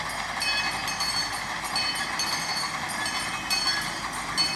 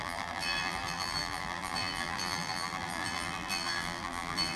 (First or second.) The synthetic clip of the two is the second